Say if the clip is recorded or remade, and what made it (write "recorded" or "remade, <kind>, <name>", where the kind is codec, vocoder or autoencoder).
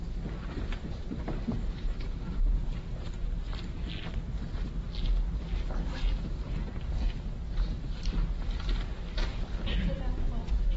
recorded